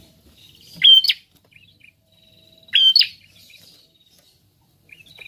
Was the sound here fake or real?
real